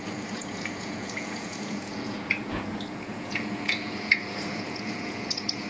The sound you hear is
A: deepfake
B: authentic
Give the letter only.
A